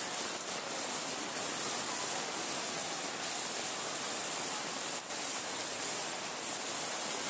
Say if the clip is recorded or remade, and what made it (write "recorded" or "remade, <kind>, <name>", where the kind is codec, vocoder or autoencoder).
recorded